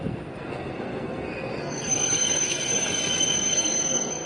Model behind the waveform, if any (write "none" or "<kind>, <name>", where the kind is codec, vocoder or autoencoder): codec, SNAC